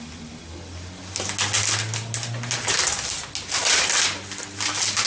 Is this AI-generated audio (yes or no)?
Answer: no